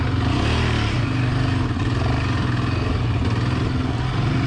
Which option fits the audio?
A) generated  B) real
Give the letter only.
B